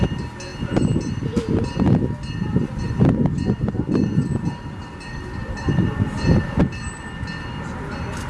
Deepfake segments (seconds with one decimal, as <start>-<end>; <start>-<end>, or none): none